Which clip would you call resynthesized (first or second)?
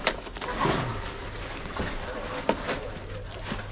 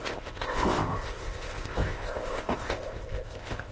second